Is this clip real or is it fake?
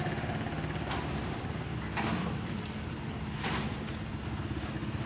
real